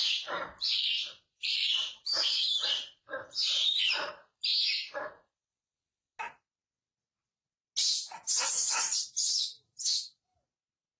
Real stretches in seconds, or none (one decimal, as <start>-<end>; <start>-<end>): 4.5-8.4